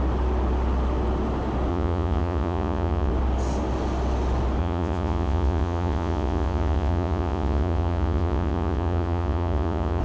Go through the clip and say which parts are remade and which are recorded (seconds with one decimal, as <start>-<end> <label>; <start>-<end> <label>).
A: 0.0-1.7 recorded; 1.7-3.1 remade; 3.1-4.6 recorded; 4.6-10.0 remade